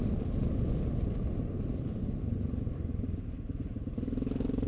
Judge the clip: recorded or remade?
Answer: recorded